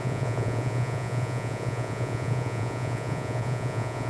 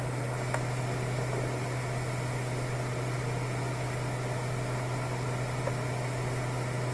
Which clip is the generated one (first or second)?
first